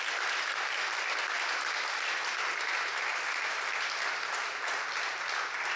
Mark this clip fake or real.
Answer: real